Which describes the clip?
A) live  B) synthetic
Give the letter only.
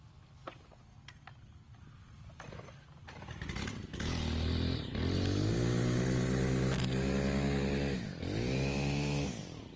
A